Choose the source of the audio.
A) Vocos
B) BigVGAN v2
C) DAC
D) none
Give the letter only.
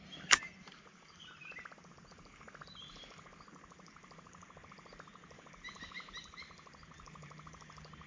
B